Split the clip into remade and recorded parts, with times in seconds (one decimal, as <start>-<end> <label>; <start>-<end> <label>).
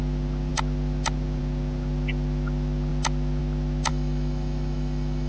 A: 0.0-3.9 recorded; 3.9-5.3 remade